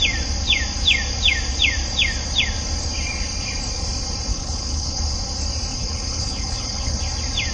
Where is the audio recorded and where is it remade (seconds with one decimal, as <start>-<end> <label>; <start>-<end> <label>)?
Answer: 0.0-4.3 recorded; 4.3-5.0 remade; 5.0-5.7 recorded; 5.7-7.0 remade; 7.0-7.5 recorded